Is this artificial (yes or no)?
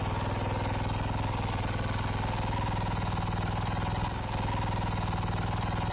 no